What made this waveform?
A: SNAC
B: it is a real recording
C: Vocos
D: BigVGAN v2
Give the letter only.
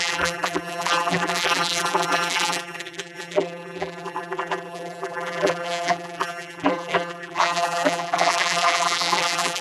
D